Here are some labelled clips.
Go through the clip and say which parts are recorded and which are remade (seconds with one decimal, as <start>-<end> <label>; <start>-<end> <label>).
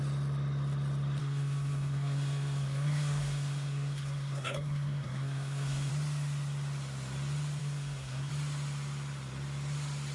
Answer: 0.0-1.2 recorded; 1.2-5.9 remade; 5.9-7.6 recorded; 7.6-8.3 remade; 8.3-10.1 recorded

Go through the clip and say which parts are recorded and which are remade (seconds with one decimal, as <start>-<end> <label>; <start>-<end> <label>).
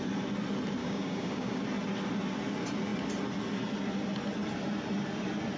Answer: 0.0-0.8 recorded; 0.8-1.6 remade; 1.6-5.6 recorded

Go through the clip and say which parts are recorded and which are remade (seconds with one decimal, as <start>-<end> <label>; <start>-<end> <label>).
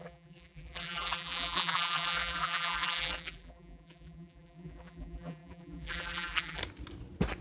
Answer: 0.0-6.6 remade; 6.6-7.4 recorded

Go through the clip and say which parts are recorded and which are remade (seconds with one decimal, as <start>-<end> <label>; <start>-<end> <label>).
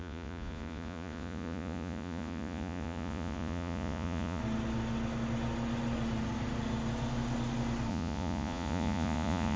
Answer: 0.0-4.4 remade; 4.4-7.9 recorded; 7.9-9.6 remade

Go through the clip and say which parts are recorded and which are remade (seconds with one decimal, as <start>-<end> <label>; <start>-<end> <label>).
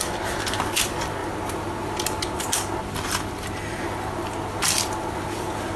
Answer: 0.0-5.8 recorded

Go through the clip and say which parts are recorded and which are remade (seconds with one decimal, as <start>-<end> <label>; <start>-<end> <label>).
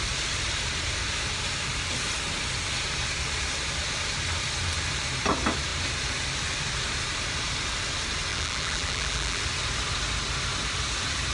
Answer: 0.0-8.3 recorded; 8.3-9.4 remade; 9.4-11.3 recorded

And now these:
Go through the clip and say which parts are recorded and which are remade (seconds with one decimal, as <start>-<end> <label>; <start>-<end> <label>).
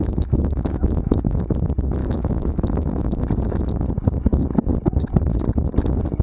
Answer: 0.0-1.5 remade; 1.5-2.0 recorded; 2.0-3.2 remade; 3.2-6.2 recorded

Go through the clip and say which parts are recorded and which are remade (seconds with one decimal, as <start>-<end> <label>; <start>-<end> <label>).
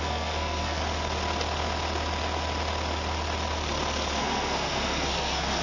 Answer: 0.0-0.8 remade; 0.8-4.2 recorded; 4.2-5.6 remade